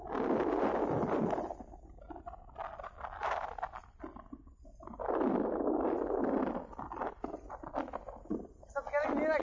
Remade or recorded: recorded